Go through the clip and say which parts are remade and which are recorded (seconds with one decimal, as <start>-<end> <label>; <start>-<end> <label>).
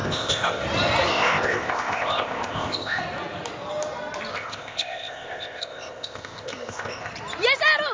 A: 0.0-0.6 remade; 0.6-1.1 recorded; 1.1-3.0 remade; 3.0-4.3 recorded; 4.3-7.1 remade; 7.1-7.9 recorded